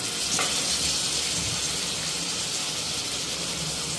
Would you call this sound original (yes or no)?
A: yes